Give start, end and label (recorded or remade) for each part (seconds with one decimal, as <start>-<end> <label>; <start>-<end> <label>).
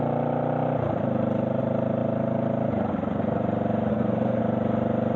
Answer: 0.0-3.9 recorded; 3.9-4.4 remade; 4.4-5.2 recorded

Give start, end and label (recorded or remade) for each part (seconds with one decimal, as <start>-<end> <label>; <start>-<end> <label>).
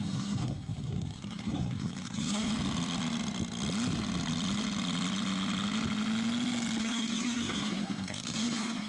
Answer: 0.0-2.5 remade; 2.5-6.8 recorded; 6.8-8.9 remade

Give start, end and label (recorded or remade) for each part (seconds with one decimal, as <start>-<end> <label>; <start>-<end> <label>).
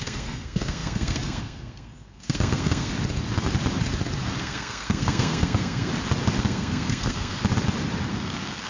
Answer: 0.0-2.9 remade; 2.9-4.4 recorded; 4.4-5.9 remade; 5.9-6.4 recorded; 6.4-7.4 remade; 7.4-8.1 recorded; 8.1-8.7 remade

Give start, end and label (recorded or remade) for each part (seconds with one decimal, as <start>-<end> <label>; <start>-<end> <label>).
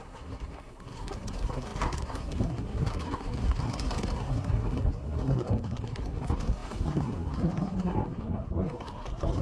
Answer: 0.0-9.4 remade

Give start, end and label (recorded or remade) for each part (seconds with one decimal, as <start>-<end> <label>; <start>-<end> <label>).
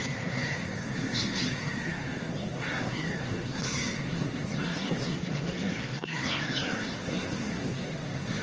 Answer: 0.0-8.4 remade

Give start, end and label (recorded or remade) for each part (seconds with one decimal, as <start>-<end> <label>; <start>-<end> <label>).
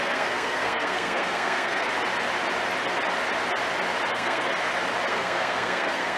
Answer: 0.0-1.9 remade; 1.9-4.1 recorded; 4.1-4.5 remade; 4.5-5.1 recorded; 5.1-6.2 remade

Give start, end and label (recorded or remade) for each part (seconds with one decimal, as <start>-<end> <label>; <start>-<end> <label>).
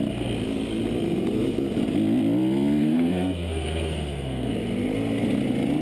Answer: 0.0-2.8 recorded; 2.8-4.5 remade; 4.5-5.8 recorded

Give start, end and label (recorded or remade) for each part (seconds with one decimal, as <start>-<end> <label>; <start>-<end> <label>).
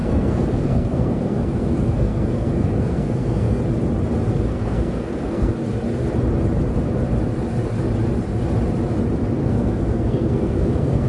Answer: 0.0-3.6 remade; 3.6-4.3 recorded; 4.3-5.5 remade; 5.5-9.4 recorded; 9.4-11.1 remade